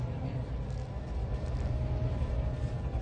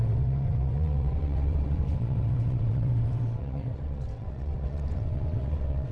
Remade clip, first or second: second